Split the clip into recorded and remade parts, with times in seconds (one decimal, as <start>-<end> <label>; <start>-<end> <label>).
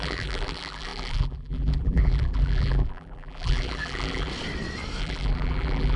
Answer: 0.0-4.3 remade; 4.3-5.0 recorded; 5.0-6.0 remade